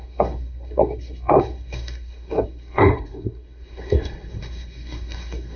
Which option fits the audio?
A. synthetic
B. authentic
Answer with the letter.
A